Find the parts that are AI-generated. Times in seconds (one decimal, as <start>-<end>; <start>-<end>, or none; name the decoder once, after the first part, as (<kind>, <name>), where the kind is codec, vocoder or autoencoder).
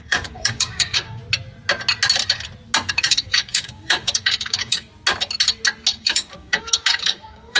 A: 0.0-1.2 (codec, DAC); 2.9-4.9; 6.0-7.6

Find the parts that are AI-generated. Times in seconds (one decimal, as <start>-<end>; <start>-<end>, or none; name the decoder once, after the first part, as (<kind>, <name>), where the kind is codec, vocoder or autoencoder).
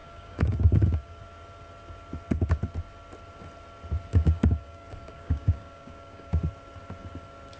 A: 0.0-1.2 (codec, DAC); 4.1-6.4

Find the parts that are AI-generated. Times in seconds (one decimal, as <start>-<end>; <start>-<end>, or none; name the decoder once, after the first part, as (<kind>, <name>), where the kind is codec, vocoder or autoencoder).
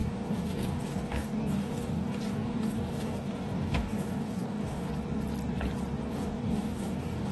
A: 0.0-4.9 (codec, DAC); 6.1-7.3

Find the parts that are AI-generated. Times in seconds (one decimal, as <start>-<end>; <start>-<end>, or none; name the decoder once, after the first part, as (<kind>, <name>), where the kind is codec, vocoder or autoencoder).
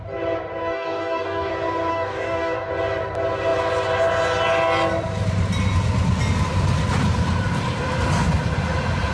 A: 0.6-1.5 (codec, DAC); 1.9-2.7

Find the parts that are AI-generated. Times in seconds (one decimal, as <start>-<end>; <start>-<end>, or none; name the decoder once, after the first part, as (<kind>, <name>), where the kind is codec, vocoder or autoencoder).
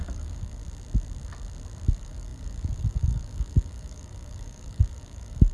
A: 0.0-0.6 (codec, DAC); 1.9-5.5